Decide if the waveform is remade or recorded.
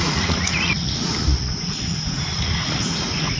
remade